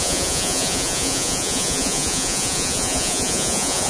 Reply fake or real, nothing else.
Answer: fake